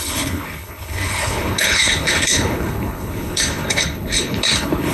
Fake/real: fake